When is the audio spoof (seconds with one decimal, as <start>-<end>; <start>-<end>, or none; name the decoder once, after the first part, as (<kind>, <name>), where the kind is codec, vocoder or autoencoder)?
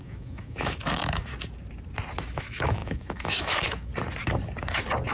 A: 0.0-1.3 (autoencoder, DAC-VAE); 2.4-3.9